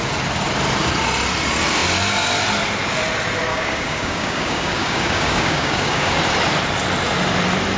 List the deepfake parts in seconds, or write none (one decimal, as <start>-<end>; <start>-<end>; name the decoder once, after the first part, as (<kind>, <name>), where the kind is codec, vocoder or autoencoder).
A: 3.5-6.1 (codec, DAC)